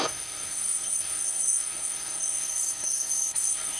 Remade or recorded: remade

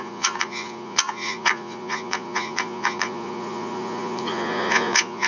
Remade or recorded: remade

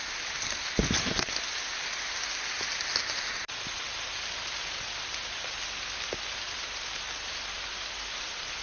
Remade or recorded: recorded